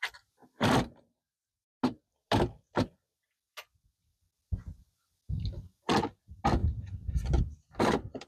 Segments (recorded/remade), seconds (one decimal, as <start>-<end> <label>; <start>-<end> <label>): 0.0-8.3 recorded